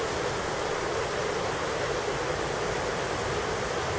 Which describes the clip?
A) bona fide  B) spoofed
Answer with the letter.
A